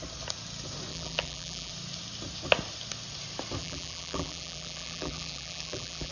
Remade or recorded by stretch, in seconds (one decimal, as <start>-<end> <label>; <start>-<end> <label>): 0.0-0.9 recorded; 0.9-1.7 remade; 1.7-3.6 recorded; 3.6-6.1 remade